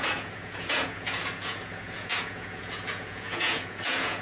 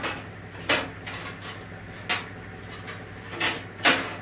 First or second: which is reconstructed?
first